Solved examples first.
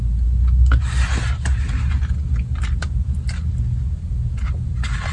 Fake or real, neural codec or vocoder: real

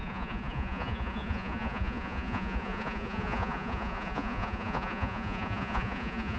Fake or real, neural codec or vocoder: fake, vocoder, Vocos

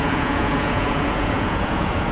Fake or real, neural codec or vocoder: fake, vocoder, Vocos